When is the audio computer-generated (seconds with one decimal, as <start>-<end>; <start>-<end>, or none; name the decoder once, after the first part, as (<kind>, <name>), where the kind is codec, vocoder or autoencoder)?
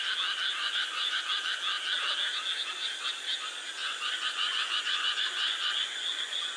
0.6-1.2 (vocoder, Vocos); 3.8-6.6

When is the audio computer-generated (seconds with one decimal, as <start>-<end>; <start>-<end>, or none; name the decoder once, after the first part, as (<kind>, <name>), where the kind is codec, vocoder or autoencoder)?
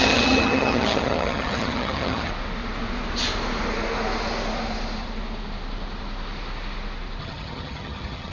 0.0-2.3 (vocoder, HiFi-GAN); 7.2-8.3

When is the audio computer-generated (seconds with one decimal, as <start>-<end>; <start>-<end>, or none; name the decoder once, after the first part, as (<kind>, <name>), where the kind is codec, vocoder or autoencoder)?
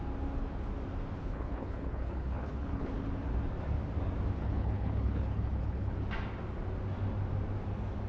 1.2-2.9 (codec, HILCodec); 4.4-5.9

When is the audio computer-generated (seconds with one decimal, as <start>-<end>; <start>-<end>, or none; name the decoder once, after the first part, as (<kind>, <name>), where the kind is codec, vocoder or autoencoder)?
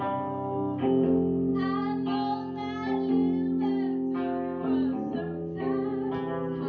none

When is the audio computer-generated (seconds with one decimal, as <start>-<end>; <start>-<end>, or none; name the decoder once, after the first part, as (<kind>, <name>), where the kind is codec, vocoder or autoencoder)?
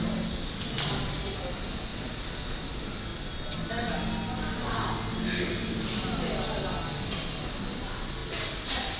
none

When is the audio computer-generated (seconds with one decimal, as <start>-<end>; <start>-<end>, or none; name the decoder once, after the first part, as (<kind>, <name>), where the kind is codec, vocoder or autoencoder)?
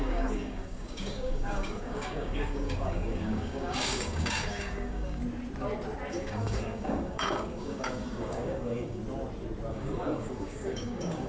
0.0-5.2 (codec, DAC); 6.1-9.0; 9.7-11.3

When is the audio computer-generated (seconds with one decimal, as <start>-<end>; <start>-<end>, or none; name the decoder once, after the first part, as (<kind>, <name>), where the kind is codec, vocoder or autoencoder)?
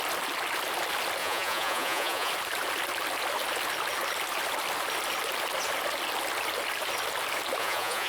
1.2-2.3 (vocoder, Vocos); 7.6-8.1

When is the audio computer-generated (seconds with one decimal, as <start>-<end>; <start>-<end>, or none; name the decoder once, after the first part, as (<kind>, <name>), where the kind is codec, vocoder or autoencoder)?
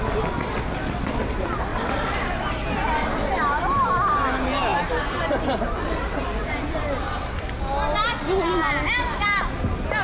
1.7-3.3 (vocoder, BigVGAN v2)